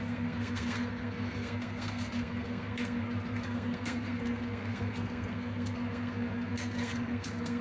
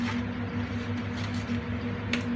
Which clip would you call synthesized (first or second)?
first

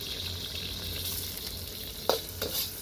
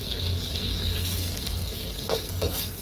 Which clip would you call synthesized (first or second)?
second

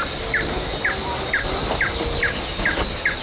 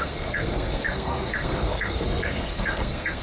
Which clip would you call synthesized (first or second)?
second